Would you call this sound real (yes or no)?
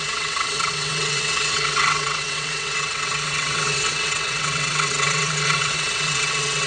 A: no